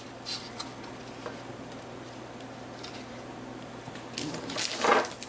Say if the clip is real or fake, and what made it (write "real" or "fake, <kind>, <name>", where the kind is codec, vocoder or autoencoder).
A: real